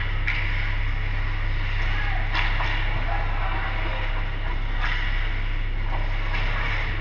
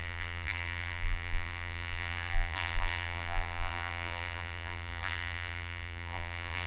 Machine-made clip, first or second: second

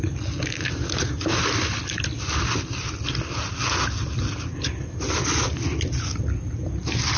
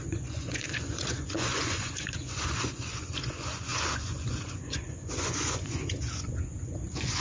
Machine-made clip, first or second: second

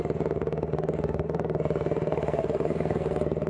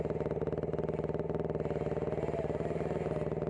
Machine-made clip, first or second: first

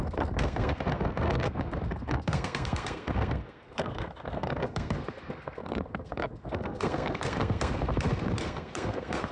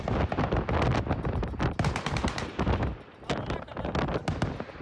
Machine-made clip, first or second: first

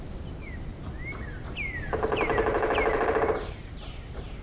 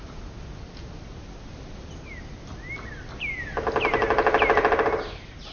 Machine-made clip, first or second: first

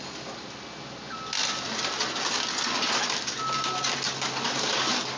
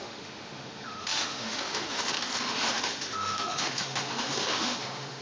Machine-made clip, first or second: second